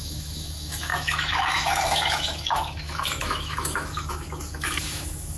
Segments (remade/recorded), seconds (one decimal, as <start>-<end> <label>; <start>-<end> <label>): 0.0-5.4 remade